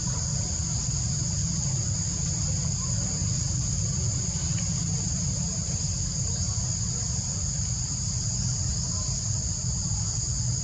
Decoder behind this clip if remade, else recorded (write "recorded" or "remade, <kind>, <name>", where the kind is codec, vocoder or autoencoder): recorded